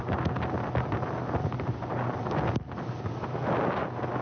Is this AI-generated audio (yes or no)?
no